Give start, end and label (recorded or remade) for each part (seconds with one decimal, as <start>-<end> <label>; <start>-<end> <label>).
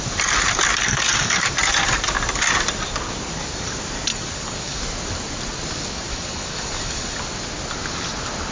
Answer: 0.0-0.8 recorded; 0.8-1.5 remade; 1.5-4.1 recorded; 4.1-4.8 remade; 4.8-6.1 recorded; 6.1-7.2 remade; 7.2-8.5 recorded